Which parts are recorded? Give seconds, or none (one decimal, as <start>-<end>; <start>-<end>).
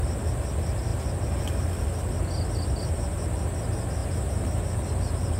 0.0-5.4